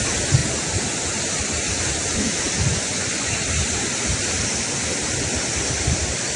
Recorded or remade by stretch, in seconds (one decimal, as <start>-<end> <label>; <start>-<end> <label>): 0.0-2.7 recorded; 2.7-3.3 remade; 3.3-6.4 recorded